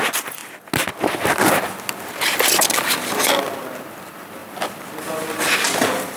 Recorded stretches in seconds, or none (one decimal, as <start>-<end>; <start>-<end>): 0.0-6.2

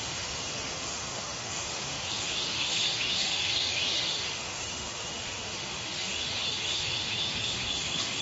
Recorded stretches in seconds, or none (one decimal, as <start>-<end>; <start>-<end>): none

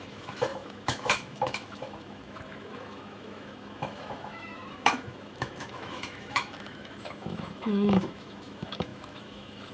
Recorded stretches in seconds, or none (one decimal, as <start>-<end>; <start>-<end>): none

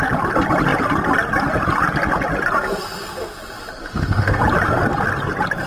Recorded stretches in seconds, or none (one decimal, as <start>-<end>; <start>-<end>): 0.0-3.8; 4.4-5.7

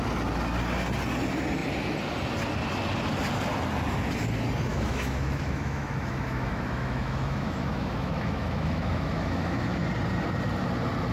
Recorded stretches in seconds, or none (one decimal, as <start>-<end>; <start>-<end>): 0.0-4.7; 9.8-11.1